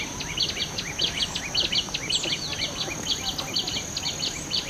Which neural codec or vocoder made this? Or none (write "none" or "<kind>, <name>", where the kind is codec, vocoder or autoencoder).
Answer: none